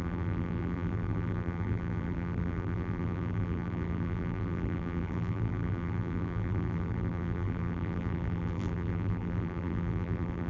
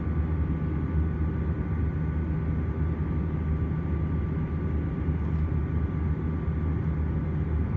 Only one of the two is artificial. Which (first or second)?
first